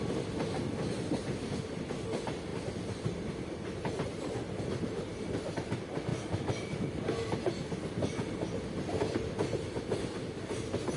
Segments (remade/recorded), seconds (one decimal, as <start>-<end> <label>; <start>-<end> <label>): 0.0-11.0 recorded